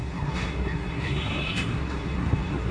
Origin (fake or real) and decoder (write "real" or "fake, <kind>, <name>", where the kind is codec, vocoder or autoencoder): fake, codec, SNAC